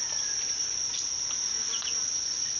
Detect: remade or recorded remade